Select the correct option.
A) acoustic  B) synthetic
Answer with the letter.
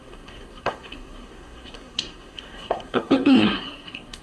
B